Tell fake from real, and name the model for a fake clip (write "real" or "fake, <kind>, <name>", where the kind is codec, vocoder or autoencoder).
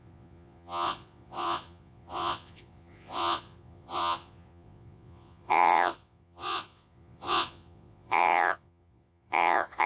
fake, vocoder, Vocos